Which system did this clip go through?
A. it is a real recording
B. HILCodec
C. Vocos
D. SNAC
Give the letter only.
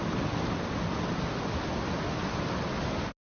A